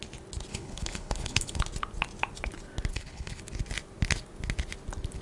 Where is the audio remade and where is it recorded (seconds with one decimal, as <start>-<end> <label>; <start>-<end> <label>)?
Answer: 0.0-0.5 recorded; 0.5-1.6 remade; 1.6-2.9 recorded; 2.9-3.4 remade; 3.4-5.2 recorded